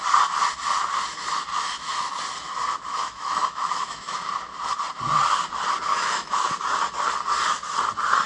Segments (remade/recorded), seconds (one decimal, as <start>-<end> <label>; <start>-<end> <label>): 0.0-1.5 recorded; 1.5-2.2 remade; 2.2-2.9 recorded; 2.9-4.3 remade; 4.3-5.9 recorded; 5.9-6.4 remade; 6.4-8.3 recorded